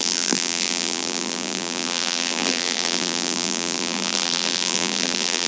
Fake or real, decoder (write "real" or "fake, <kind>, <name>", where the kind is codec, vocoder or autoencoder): fake, vocoder, BigVGAN v2